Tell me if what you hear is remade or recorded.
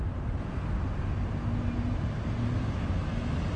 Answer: recorded